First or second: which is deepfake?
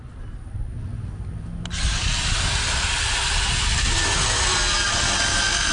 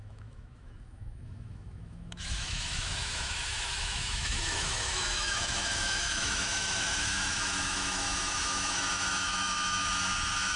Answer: second